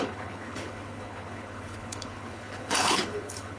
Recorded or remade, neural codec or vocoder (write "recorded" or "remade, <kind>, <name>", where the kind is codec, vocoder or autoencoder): remade, codec, HILCodec